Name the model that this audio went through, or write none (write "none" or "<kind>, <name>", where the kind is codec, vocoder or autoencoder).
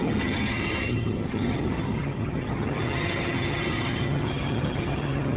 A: vocoder, HiFi-GAN